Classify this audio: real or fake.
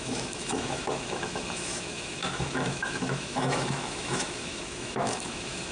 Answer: fake